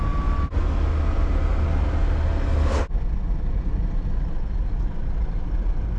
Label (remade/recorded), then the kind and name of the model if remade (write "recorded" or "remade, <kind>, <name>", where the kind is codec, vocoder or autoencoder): recorded